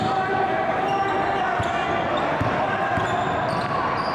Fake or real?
real